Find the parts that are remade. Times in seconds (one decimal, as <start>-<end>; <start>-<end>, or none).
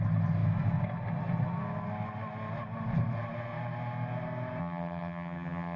4.6-5.8